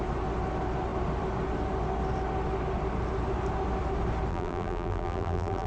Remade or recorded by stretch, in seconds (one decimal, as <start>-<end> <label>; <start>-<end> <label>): 0.0-4.3 recorded; 4.3-5.7 remade